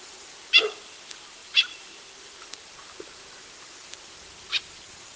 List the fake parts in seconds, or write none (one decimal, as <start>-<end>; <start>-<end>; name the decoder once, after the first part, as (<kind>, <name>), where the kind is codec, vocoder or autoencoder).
0.0-5.2 (vocoder, BigVGAN v2)